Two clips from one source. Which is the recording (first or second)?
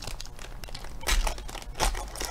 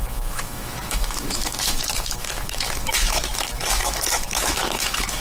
first